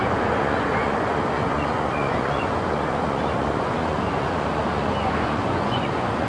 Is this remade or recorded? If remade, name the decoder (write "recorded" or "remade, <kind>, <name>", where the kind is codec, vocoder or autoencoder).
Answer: remade, vocoder, Vocos